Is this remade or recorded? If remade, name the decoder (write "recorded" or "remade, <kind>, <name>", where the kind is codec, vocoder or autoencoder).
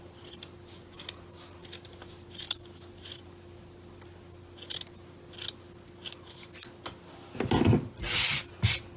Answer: recorded